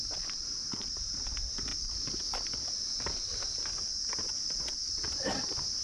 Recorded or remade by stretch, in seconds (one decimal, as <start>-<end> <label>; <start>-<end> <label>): 0.0-1.7 remade; 1.7-5.2 recorded; 5.2-5.8 remade